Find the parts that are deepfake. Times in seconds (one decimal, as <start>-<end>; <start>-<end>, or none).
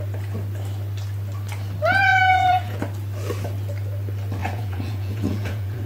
2.1-2.8; 4.4-5.9